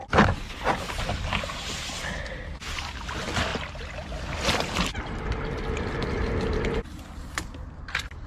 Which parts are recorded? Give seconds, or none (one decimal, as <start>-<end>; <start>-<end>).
0.0-8.3